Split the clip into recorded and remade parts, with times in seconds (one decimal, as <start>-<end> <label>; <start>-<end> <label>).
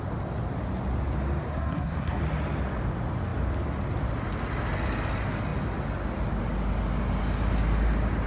0.0-1.5 recorded; 1.5-2.2 remade; 2.2-8.3 recorded